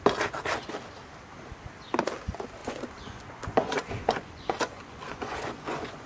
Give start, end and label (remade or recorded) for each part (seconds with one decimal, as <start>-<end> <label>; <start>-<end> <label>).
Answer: 0.0-2.6 recorded; 2.6-6.1 remade